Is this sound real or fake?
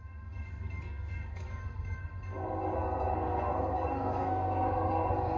fake